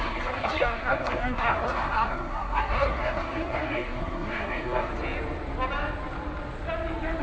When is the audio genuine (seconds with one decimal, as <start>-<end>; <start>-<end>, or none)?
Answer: 4.9-7.2